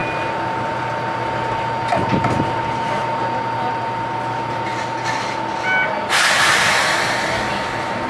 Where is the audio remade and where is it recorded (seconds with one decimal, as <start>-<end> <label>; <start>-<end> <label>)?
0.0-8.1 recorded